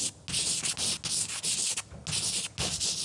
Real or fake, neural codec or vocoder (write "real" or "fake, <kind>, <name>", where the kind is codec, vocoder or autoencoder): real